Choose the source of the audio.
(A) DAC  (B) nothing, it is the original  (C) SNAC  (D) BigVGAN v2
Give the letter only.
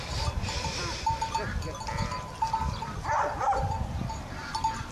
D